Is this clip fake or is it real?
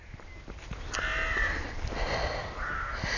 real